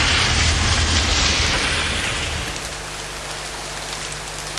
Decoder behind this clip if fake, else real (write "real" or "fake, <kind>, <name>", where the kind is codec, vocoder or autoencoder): real